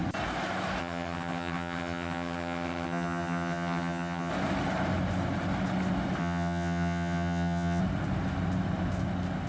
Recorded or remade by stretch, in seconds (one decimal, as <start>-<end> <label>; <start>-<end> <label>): 0.0-0.8 recorded; 0.8-4.3 remade; 4.3-6.2 recorded; 6.2-7.8 remade; 7.8-9.5 recorded